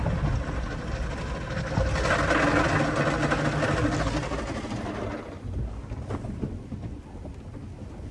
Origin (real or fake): real